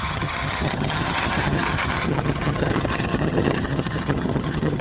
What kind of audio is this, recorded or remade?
remade